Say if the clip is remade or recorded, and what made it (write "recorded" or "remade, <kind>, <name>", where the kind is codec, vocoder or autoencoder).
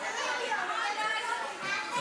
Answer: recorded